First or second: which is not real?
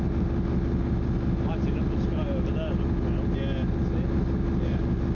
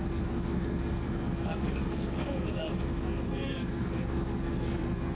second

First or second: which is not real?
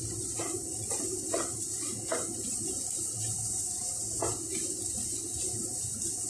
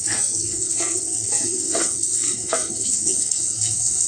second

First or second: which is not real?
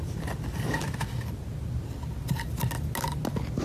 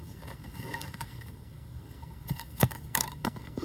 second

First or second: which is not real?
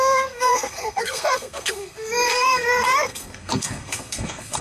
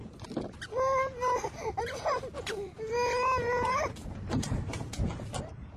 first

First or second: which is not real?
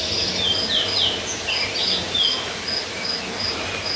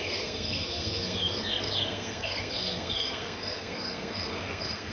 second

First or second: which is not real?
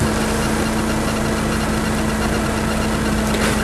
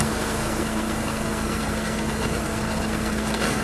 second